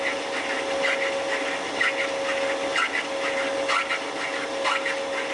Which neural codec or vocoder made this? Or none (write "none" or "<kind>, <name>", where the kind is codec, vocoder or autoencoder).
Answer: none